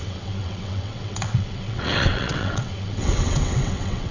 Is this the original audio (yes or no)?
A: no